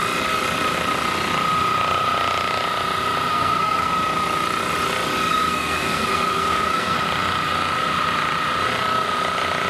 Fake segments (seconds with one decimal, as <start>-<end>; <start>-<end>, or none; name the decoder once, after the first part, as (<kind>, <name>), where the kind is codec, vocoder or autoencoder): 3.3-3.9 (codec, SNAC); 5.3-7.0